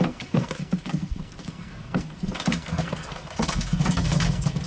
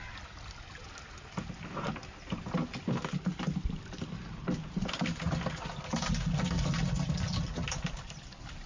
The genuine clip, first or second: second